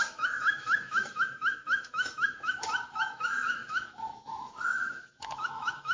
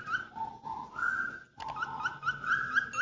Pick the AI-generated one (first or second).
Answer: first